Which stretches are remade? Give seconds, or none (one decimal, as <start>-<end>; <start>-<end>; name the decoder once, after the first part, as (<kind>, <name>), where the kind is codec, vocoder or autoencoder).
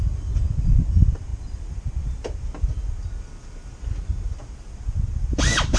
none